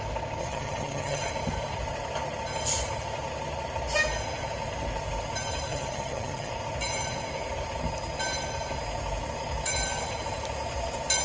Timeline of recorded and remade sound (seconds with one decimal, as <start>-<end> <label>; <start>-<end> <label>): 0.0-0.4 recorded; 0.4-1.3 remade; 1.3-5.7 recorded; 5.7-6.5 remade; 6.5-11.2 recorded